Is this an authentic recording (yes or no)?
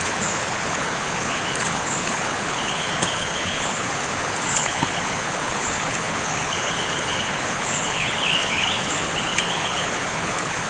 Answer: no